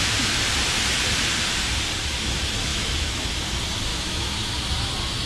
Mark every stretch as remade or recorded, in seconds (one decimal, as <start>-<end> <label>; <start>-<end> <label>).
0.0-2.7 recorded; 2.7-3.3 remade; 3.3-3.9 recorded; 3.9-4.5 remade; 4.5-5.3 recorded